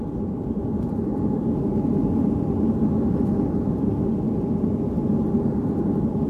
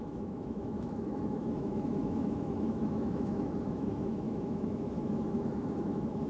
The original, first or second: first